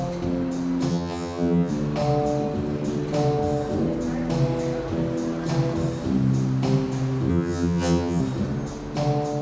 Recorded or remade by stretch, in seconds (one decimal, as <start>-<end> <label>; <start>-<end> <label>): 0.0-0.9 recorded; 0.9-1.7 remade; 1.7-7.3 recorded; 7.3-8.2 remade; 8.2-9.4 recorded